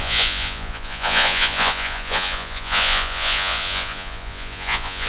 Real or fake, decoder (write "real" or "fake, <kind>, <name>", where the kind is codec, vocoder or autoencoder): fake, vocoder, Vocos